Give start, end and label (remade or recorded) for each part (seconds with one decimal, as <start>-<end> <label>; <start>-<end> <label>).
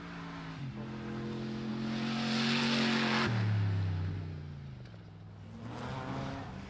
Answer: 0.0-6.7 recorded